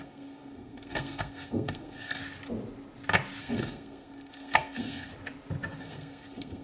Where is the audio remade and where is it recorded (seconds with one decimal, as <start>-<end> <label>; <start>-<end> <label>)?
0.0-2.2 remade; 2.2-3.4 recorded; 3.4-5.1 remade; 5.1-5.8 recorded; 5.8-6.6 remade